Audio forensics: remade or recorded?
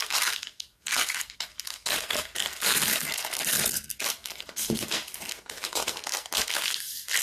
remade